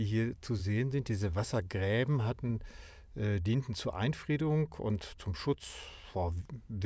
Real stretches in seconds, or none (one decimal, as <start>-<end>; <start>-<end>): 0.0-0.6; 2.5-5.3; 6.4-6.9